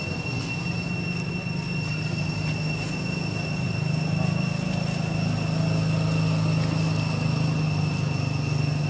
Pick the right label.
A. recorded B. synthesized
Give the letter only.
A